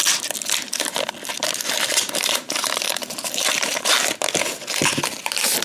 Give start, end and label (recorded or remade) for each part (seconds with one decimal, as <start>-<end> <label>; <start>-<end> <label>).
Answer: 0.0-3.0 recorded; 3.0-3.9 remade; 3.9-5.6 recorded